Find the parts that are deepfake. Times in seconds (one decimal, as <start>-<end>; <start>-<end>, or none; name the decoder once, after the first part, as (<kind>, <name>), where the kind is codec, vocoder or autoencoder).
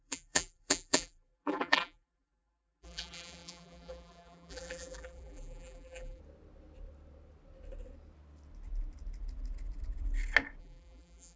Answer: 0.0-6.2 (vocoder, BigVGAN v2); 10.6-11.4